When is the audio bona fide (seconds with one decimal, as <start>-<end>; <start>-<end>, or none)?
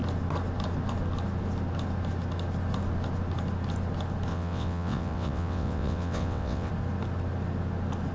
0.0-4.3; 6.7-8.1